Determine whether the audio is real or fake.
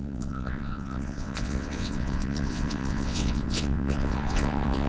fake